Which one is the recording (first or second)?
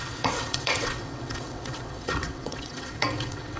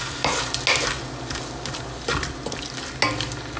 second